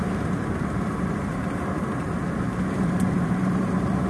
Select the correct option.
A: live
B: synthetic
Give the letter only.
B